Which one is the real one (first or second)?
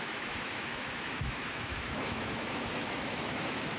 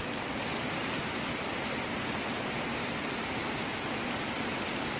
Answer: second